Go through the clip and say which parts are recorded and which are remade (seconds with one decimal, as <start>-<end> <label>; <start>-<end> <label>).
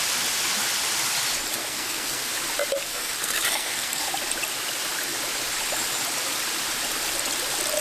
0.0-1.6 recorded; 1.6-2.3 remade; 2.3-2.9 recorded; 2.9-4.1 remade; 4.1-7.8 recorded